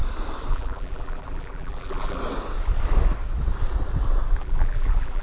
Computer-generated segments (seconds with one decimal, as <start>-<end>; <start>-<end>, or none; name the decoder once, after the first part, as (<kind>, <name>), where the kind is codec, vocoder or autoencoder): 0.5-2.2 (vocoder, BigVGAN v2); 4.4-5.2